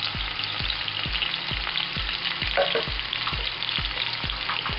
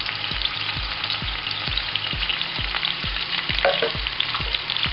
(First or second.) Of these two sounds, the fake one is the second